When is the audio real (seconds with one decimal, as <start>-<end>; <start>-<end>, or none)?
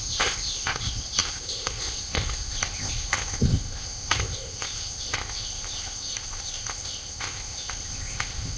none